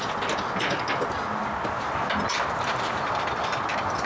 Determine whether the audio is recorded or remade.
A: recorded